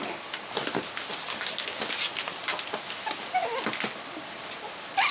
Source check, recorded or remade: recorded